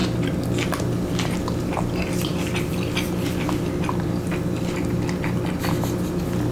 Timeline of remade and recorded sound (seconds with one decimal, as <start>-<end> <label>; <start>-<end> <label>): 0.0-6.5 recorded